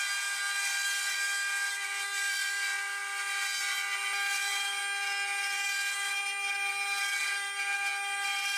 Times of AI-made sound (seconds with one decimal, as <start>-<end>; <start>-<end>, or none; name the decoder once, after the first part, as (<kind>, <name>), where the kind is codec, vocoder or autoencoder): none